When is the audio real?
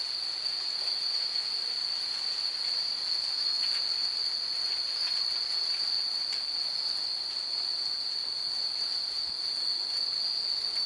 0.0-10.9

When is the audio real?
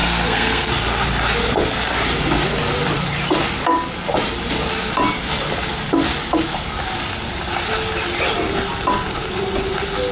0.7-10.1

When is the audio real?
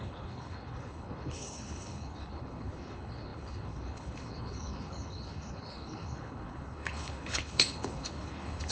none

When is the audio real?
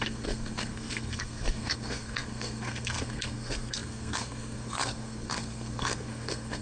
none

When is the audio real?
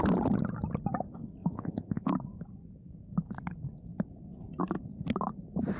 0.0-1.4; 2.1-5.8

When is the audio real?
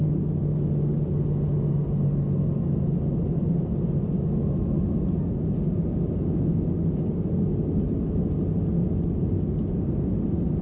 0.0-8.8; 9.3-10.6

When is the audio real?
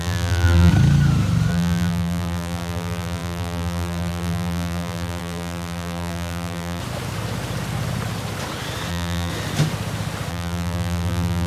0.7-1.5; 6.8-8.9; 9.3-10.3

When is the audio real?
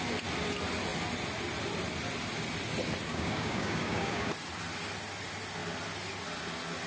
0.0-3.1; 4.3-6.9